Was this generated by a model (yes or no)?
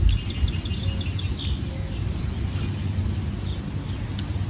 no